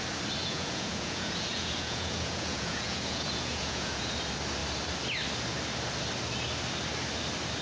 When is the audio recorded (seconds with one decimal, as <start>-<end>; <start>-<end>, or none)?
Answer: 0.0-0.4; 4.1-7.6